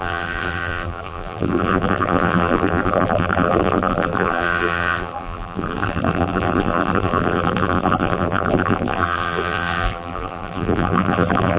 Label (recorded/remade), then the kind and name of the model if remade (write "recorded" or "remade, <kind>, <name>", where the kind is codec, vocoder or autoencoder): remade, vocoder, BigVGAN v2